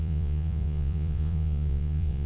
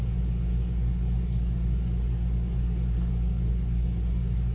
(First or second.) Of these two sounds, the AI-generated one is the first